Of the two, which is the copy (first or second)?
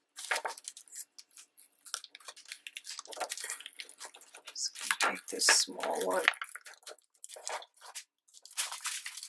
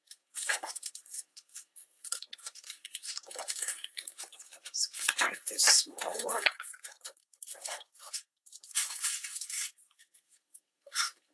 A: second